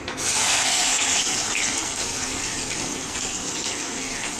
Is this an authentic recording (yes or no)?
no